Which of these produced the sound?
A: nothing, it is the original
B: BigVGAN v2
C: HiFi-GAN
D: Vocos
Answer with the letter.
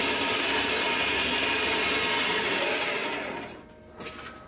A